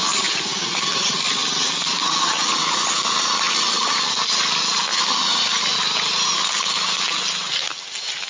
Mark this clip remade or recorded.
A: recorded